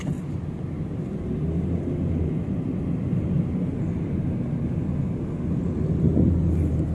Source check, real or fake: real